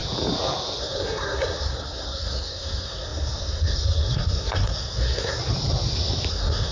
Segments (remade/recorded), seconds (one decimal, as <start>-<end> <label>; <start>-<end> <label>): 0.0-0.8 recorded; 0.8-5.4 remade; 5.4-6.3 recorded; 6.3-6.7 remade